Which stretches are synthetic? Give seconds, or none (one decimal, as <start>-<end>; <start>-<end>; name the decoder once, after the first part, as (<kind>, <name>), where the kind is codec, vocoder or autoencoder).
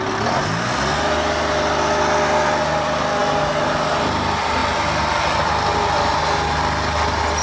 none